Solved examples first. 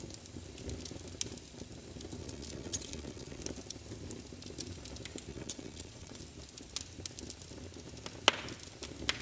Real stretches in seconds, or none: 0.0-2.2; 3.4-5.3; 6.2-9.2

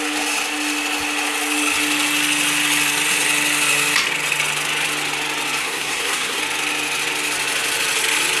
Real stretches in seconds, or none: 0.0-5.6; 6.4-8.4

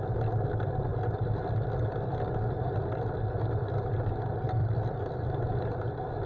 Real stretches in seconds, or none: 0.0-4.6; 5.3-6.3

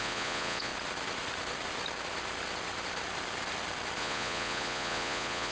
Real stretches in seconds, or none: 0.7-4.0

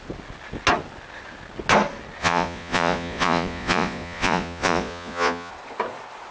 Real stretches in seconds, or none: 0.0-2.2; 5.5-6.3

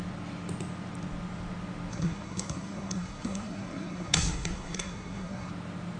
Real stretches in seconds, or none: 0.0-1.9; 5.5-6.0

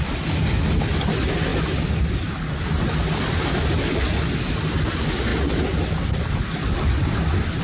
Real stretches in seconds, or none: 0.0-7.6

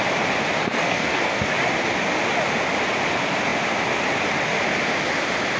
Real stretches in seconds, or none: 0.0-0.6; 1.5-5.6